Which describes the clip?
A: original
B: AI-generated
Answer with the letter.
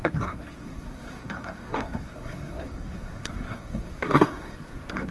B